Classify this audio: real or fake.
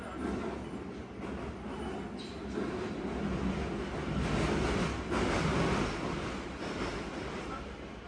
real